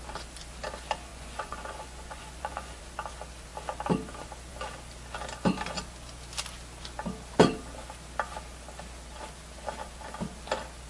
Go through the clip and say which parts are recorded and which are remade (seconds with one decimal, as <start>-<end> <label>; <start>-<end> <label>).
0.0-1.1 recorded; 1.1-2.8 remade; 2.8-10.9 recorded